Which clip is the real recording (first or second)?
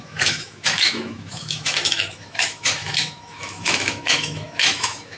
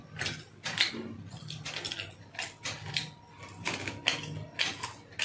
second